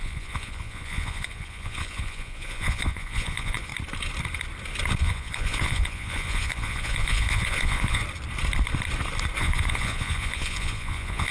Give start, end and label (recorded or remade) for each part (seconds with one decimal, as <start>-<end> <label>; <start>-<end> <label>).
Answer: 0.0-3.7 remade; 3.7-5.0 recorded; 5.0-8.0 remade; 8.0-9.4 recorded; 9.4-11.3 remade